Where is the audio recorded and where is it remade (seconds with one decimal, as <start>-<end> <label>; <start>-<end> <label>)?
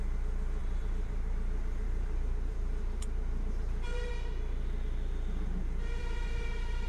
0.0-0.6 recorded; 0.6-4.1 remade; 4.1-6.0 recorded; 6.0-6.9 remade